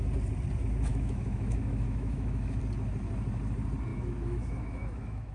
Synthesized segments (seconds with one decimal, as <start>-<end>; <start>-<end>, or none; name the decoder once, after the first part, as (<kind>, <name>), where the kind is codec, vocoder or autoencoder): 0.9-2.6 (autoencoder, DAC-VAE); 3.9-5.3